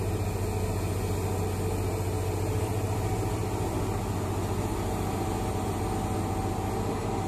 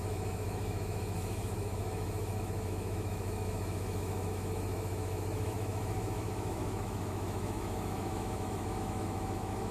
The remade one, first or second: second